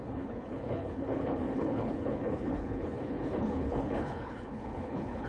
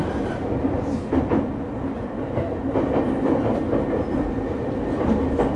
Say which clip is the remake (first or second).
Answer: first